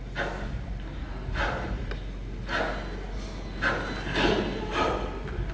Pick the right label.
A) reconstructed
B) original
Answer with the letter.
B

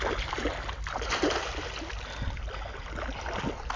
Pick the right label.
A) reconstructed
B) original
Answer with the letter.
B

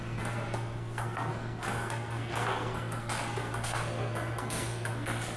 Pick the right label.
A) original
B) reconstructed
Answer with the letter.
B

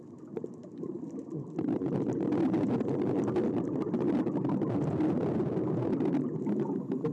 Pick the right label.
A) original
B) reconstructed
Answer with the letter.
B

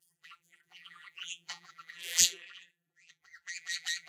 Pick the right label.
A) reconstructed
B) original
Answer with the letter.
A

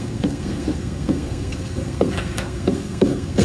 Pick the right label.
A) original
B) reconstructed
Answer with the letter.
B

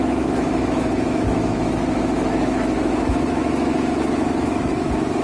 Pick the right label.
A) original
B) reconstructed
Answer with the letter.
B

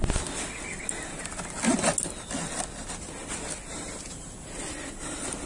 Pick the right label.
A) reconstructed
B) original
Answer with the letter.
B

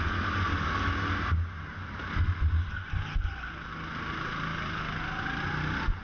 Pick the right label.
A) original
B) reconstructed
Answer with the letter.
A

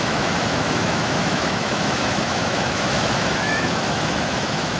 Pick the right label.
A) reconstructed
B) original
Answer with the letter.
A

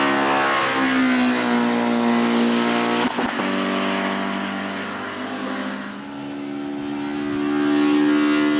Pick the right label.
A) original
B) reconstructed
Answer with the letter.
A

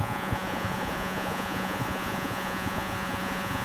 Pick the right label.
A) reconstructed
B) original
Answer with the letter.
A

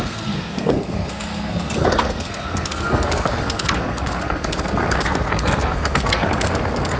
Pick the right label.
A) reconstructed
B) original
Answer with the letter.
A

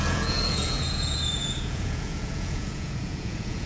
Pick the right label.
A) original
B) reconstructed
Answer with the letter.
B